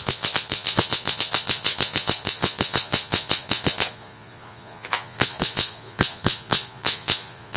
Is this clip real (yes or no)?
no